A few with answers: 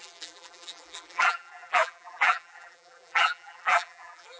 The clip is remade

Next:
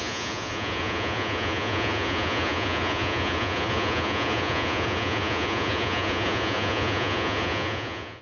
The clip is remade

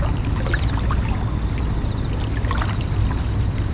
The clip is recorded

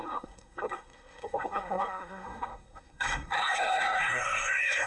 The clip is remade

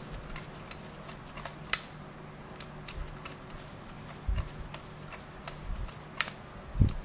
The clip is recorded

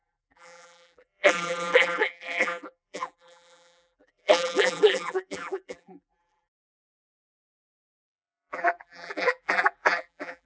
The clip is remade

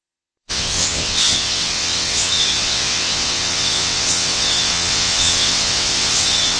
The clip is remade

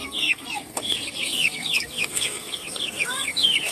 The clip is remade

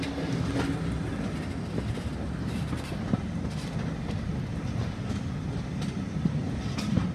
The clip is recorded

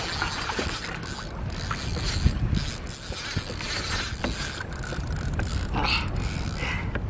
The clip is recorded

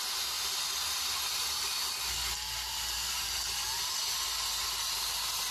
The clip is recorded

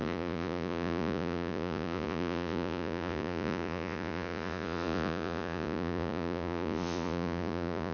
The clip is remade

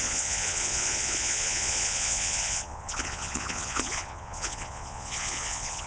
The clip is remade